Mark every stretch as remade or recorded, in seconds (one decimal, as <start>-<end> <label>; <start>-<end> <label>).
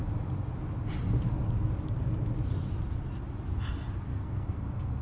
0.0-4.1 recorded; 4.1-5.0 remade